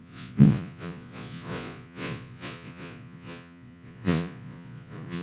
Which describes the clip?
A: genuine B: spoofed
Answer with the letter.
B